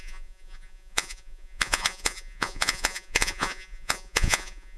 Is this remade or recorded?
remade